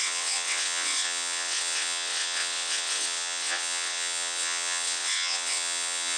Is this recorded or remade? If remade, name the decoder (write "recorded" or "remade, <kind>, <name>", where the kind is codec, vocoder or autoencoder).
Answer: remade, vocoder, WaveNeXt